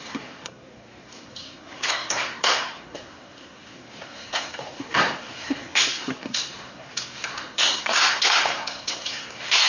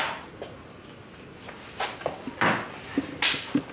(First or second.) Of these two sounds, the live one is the second